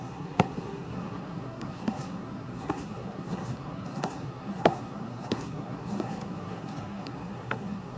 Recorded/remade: remade